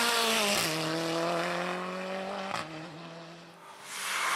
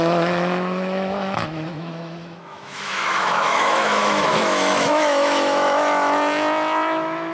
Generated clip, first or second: second